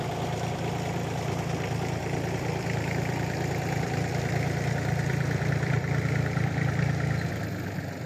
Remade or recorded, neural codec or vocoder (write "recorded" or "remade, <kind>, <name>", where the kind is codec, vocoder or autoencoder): remade, vocoder, BigVGAN v2